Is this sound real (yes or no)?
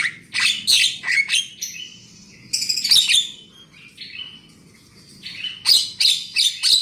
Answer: yes